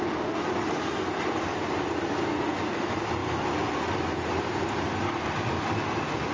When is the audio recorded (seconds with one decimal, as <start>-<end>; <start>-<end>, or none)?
0.0-6.3

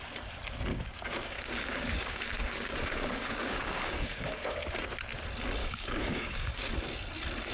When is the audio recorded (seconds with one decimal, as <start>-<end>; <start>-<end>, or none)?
0.0-0.7; 4.6-5.6; 6.7-7.5

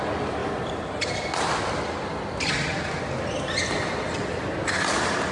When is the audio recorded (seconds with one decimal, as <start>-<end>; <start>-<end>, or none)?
0.0-5.3

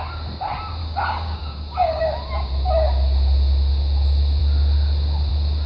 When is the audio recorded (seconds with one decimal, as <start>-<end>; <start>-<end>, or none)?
0.0-0.8; 2.0-5.7

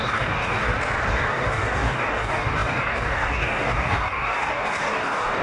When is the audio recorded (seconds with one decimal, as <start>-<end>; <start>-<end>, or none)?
0.6-1.1

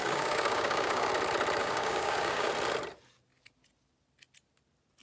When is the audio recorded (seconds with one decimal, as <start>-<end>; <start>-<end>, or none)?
1.1-1.6; 2.5-5.0

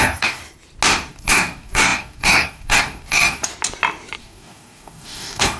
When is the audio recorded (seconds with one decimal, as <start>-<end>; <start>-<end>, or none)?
0.4-1.1; 3.5-4.2